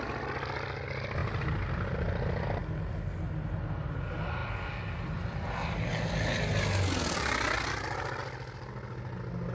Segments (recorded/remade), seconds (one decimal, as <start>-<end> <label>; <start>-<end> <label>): 0.0-9.5 recorded